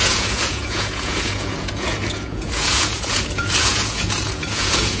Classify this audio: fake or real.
fake